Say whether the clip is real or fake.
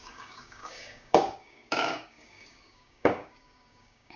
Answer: fake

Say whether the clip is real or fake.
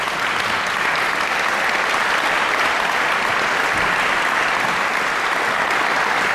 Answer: real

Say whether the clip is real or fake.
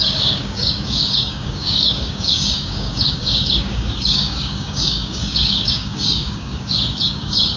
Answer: fake